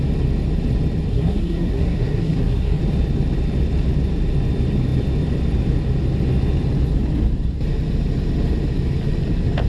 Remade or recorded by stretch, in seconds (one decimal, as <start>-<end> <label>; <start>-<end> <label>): 0.0-1.1 recorded; 1.1-2.8 remade; 2.8-9.7 recorded